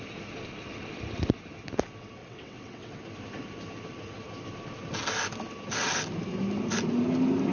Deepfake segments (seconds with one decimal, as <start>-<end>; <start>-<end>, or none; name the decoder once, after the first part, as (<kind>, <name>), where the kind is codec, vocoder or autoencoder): 2.2-3.0 (vocoder, WaveNeXt)